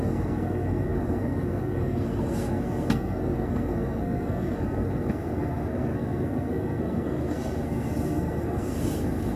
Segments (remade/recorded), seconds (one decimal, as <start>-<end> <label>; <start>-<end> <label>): 0.0-9.4 remade